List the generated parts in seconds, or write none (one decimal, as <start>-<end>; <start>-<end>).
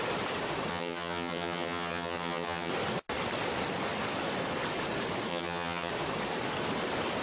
0.7-2.7; 5.3-5.9